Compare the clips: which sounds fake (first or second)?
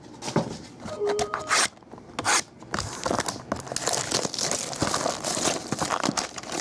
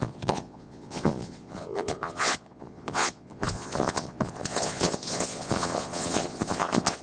second